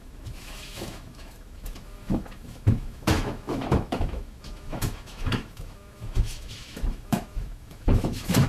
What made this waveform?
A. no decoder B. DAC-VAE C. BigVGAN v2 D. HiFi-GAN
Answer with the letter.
B